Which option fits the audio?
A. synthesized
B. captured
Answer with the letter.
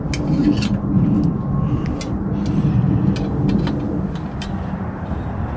B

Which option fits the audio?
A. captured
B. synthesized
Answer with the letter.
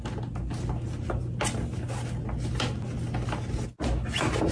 A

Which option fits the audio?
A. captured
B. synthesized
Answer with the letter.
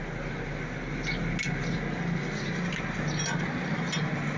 A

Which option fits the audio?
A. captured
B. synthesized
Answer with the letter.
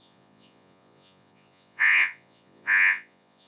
B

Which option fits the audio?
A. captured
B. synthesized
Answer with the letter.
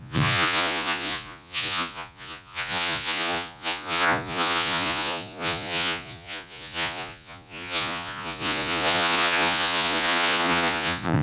B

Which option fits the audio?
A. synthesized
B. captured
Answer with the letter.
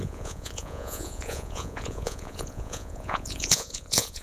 A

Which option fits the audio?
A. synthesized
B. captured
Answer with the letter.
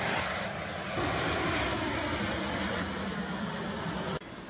B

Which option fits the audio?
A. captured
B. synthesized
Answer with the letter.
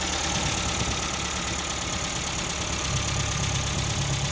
A